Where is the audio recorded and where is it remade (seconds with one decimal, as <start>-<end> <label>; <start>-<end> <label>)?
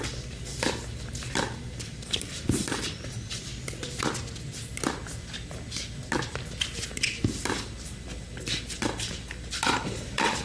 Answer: 0.0-3.5 remade; 3.5-6.9 recorded; 6.9-10.4 remade